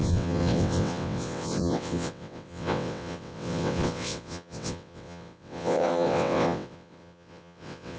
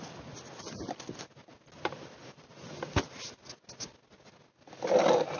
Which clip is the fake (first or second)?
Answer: first